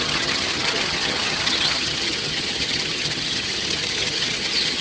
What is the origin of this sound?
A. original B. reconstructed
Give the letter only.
B